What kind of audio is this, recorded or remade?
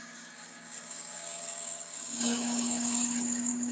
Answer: remade